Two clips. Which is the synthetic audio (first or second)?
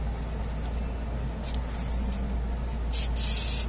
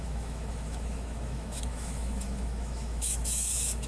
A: second